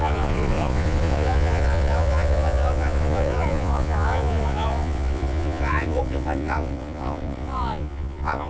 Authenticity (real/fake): fake